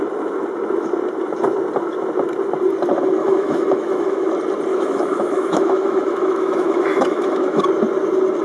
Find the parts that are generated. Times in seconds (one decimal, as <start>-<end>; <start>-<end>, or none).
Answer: 3.2-4.3; 4.7-7.6